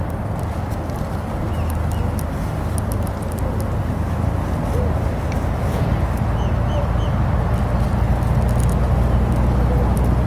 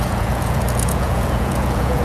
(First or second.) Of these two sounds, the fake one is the second